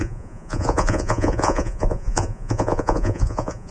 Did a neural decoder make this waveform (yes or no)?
yes